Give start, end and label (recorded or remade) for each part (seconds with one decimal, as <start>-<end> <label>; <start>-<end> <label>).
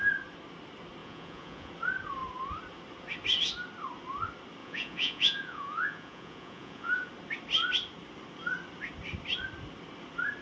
0.0-1.0 recorded; 1.0-1.7 remade; 1.7-4.6 recorded; 4.6-7.1 remade; 7.1-10.4 recorded